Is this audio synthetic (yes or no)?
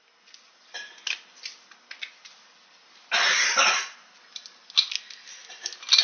no